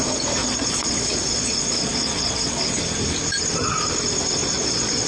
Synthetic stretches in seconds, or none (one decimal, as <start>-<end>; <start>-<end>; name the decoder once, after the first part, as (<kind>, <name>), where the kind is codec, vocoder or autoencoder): 0.4-2.6 (vocoder, Vocos); 4.4-5.1